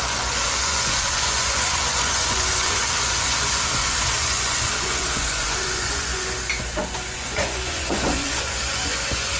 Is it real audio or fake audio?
fake